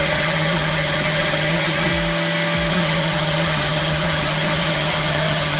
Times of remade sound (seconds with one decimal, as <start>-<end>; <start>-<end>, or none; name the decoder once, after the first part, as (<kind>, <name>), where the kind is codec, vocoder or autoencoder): 0.0-1.9 (vocoder, HiFi-GAN); 2.7-5.6